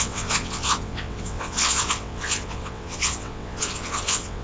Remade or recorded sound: remade